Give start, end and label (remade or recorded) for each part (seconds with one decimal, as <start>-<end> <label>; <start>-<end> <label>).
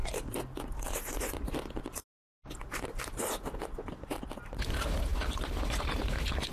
0.0-6.5 recorded